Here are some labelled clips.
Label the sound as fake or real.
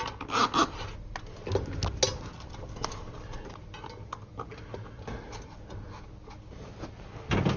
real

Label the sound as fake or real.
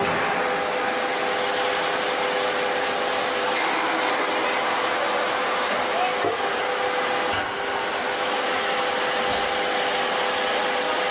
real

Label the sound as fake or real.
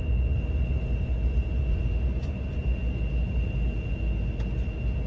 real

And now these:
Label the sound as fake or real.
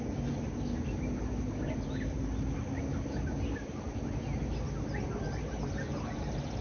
real